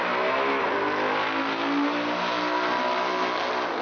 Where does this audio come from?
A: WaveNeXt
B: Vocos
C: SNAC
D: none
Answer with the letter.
D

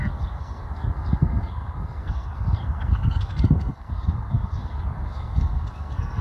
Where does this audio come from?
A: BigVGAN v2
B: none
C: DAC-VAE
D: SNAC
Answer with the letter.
D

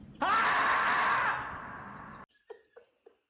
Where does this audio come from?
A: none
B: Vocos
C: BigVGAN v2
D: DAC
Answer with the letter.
A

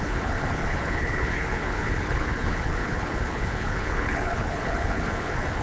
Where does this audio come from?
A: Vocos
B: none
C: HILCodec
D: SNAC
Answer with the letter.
C